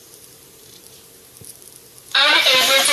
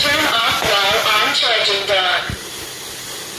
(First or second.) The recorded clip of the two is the second